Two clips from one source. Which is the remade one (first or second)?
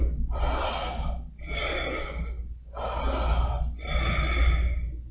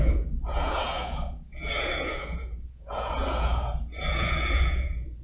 second